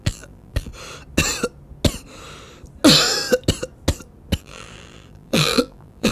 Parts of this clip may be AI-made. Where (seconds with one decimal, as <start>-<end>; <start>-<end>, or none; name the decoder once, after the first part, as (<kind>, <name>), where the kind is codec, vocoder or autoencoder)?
0.0-0.7 (vocoder, BigVGAN v2); 4.4-6.1

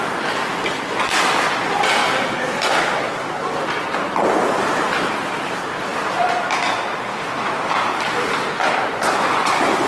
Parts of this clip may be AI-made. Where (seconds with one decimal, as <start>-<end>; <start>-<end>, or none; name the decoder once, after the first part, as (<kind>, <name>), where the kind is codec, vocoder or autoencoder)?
8.9-9.9 (vocoder, Vocos)

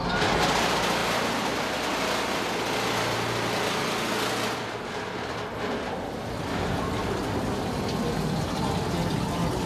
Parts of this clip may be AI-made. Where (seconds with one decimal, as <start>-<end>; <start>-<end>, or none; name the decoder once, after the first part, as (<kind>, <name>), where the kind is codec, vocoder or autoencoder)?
none